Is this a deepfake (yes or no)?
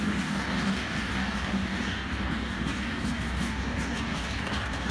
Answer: yes